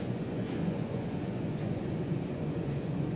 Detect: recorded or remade remade